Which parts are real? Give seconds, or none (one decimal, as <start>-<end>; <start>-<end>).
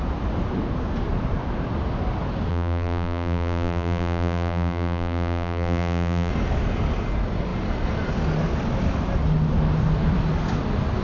0.0-2.5; 6.3-11.0